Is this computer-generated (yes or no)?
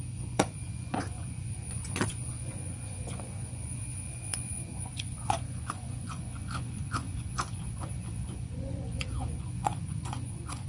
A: yes